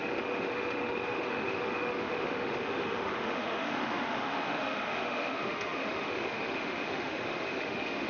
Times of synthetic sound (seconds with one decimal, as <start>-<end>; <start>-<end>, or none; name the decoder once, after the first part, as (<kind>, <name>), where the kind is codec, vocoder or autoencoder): 0.0-8.1 (autoencoder, DAC-VAE)